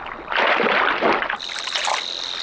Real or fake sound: real